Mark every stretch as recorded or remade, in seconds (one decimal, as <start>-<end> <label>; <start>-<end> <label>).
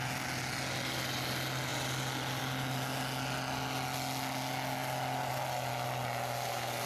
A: 0.0-6.9 recorded